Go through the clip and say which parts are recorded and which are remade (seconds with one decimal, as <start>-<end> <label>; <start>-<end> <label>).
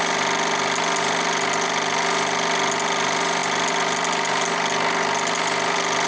0.0-6.1 recorded